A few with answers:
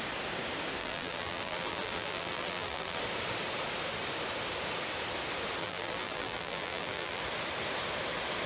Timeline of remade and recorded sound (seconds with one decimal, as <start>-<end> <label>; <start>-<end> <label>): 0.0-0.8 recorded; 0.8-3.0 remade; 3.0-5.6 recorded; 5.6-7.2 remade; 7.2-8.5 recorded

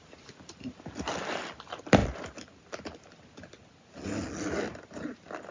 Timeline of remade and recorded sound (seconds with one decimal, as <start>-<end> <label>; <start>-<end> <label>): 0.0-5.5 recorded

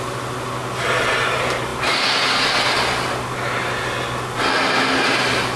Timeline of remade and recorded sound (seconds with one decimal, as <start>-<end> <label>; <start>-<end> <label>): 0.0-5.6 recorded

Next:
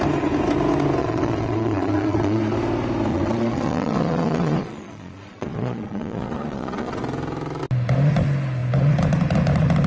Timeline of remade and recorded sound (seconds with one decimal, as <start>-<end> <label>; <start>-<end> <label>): 0.0-1.0 recorded; 1.0-2.4 remade; 2.4-3.1 recorded; 3.1-7.0 remade; 7.0-9.9 recorded

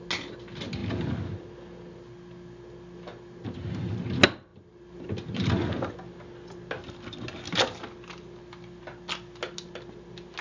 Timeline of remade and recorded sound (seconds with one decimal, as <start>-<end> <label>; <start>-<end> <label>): 0.0-10.4 recorded